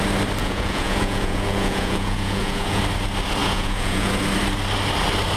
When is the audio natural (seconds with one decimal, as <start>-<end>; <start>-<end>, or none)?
0.0-0.4; 2.8-3.4; 4.1-5.4